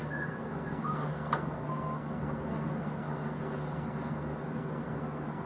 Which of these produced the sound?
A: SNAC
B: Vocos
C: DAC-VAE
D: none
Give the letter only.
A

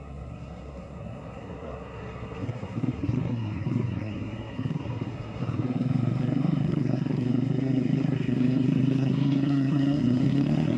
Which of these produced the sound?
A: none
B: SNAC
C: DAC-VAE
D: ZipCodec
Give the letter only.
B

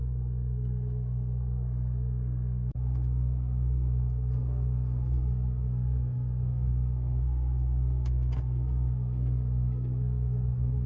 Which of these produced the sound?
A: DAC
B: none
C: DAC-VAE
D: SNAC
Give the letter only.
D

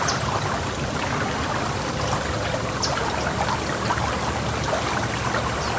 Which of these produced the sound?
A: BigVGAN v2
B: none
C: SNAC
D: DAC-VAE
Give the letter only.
B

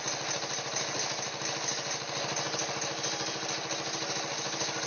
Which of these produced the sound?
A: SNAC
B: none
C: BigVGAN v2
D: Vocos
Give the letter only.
B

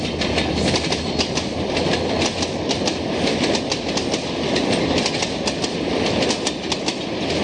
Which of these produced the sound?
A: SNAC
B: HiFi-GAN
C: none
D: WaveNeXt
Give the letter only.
C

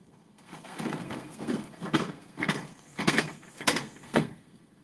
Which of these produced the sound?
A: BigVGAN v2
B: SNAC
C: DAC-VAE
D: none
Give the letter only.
B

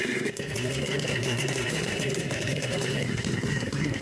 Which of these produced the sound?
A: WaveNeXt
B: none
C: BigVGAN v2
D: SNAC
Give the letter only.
D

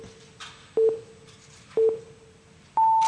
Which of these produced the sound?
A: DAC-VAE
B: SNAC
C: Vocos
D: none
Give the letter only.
D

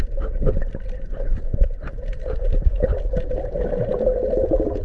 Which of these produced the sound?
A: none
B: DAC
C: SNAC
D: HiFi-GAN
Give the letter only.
A